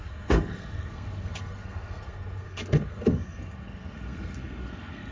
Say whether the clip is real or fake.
fake